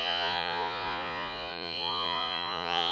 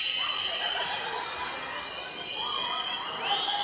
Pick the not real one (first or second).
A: first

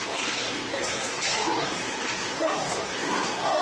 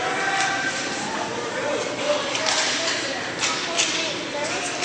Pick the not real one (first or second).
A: first